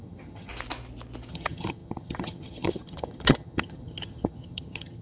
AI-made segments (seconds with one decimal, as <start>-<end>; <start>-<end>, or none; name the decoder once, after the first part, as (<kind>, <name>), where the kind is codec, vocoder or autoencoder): 0.0-0.5 (vocoder, HiFi-GAN); 1.3-5.0